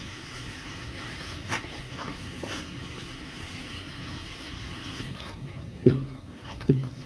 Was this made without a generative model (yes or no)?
no